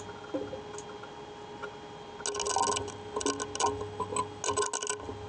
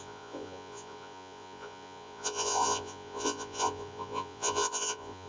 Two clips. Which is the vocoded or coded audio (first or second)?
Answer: second